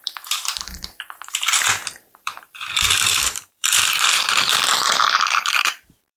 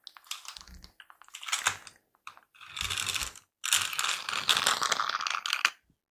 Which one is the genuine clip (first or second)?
second